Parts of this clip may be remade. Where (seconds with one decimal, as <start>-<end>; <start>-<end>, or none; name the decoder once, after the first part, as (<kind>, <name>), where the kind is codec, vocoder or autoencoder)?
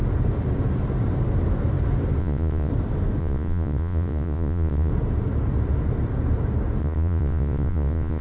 2.2-2.7 (vocoder, Vocos); 3.2-4.9; 6.8-8.2